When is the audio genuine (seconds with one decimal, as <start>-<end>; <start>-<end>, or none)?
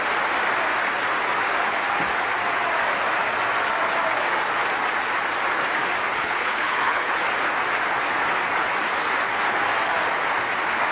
0.0-6.1; 7.2-10.9